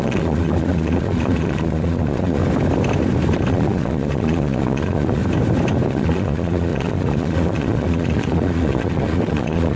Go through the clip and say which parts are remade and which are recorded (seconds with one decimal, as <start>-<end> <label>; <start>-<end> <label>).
0.0-2.4 remade; 2.4-3.5 recorded; 3.5-5.2 remade; 5.2-5.9 recorded; 5.9-9.8 remade